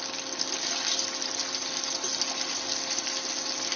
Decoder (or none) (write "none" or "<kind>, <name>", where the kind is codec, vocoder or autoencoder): none